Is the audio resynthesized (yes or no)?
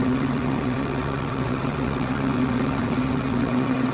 yes